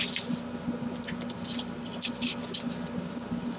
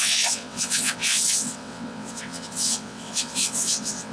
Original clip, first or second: first